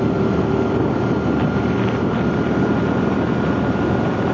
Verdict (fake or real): real